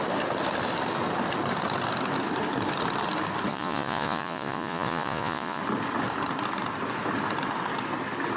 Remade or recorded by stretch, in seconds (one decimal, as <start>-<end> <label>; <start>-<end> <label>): 0.0-3.5 recorded; 3.5-5.6 remade; 5.6-8.4 recorded